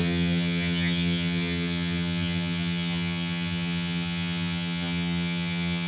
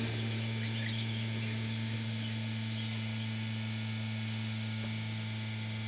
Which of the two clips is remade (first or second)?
first